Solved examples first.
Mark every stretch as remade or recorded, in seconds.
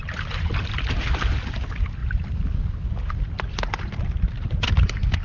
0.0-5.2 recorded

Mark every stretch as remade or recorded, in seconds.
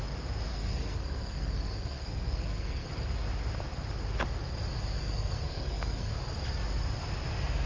0.0-0.5 recorded; 0.5-2.9 remade; 2.9-5.0 recorded; 5.0-6.1 remade; 6.1-7.7 recorded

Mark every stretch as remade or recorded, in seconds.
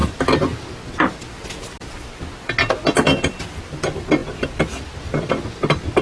0.0-6.0 recorded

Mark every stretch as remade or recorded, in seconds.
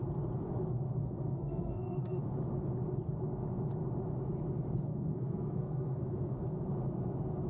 0.0-1.0 recorded; 1.0-2.2 remade; 2.2-4.8 recorded; 4.8-6.7 remade; 6.7-7.5 recorded